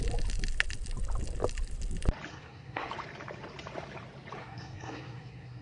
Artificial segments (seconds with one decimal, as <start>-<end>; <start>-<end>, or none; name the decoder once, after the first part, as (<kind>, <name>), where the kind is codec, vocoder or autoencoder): 2.3-2.9 (codec, SNAC); 4.4-5.6